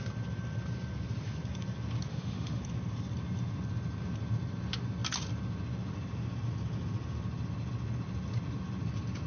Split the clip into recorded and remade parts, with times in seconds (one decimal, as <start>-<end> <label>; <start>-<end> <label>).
0.0-2.1 recorded; 2.1-2.6 remade; 2.6-9.3 recorded